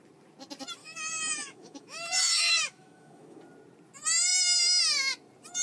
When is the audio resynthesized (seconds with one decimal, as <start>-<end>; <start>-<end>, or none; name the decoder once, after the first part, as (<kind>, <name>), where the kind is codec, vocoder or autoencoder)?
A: 0.8-3.4 (autoencoder, DAC-VAE)